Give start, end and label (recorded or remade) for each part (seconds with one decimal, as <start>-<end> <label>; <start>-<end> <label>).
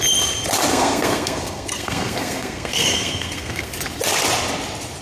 0.0-0.7 recorded; 0.7-3.7 remade; 3.7-5.0 recorded